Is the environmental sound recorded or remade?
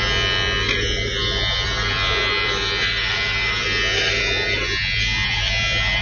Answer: recorded